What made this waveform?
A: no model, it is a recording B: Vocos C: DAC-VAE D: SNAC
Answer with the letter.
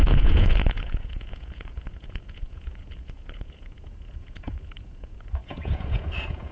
B